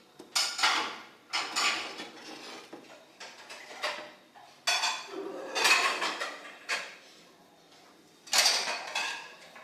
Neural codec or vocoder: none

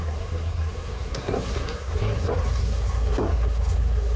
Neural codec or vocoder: codec, SNAC